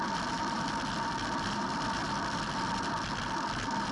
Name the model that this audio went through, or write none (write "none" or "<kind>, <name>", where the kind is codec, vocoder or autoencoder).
vocoder, BigVGAN v2